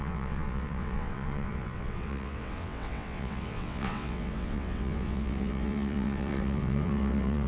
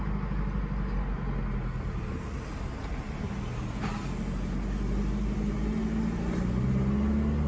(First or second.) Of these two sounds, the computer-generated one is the first